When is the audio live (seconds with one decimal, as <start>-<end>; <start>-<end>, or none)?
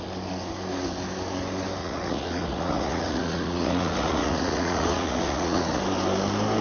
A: 0.0-1.8; 5.8-6.6